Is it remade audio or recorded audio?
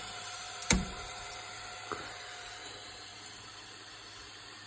remade